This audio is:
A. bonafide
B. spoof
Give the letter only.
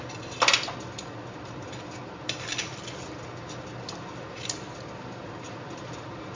A